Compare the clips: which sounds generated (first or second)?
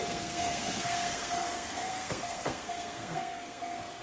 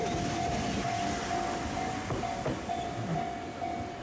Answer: first